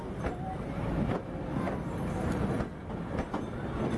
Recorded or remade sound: recorded